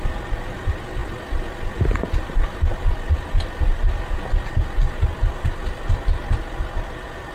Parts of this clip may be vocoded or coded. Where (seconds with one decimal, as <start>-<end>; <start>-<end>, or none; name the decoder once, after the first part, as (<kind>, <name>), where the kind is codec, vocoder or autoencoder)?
none